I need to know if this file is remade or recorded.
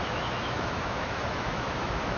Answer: remade